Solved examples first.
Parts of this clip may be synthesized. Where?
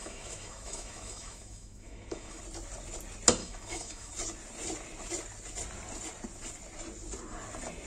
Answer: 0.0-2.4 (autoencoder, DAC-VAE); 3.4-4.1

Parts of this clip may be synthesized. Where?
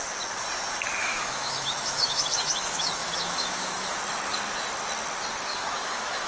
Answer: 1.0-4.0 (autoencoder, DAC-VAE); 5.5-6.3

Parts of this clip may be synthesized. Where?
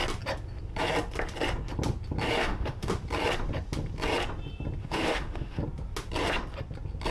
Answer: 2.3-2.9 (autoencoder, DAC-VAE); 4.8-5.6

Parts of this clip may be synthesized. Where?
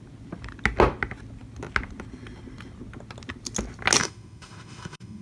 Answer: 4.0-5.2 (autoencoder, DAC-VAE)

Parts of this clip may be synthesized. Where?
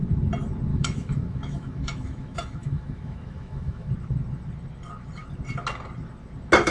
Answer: 0.7-3.9 (autoencoder, DAC-VAE)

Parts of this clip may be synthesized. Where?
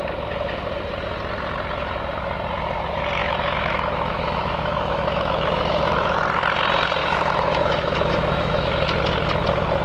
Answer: 3.2-6.2 (autoencoder, DAC-VAE); 7.0-8.7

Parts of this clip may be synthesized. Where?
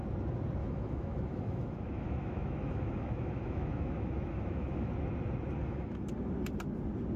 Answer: 0.6-4.9 (autoencoder, DAC-VAE); 5.6-6.1